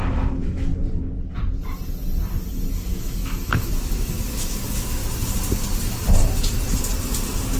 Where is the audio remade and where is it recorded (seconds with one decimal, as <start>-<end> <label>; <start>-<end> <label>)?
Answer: 0.0-0.7 remade; 0.7-2.7 recorded; 2.7-5.0 remade; 5.0-7.6 recorded